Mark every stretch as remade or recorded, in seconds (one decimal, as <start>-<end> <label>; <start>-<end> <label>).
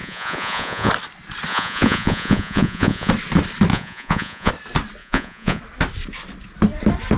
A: 0.0-0.9 remade; 0.9-1.5 recorded; 1.5-3.1 remade; 3.1-3.7 recorded; 3.7-4.5 remade; 4.5-5.0 recorded; 5.0-5.6 remade; 5.6-7.2 recorded